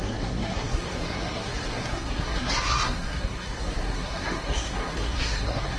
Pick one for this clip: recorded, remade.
remade